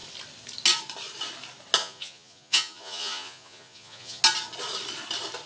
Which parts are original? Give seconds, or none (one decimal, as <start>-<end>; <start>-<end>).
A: 0.0-1.8; 4.2-5.5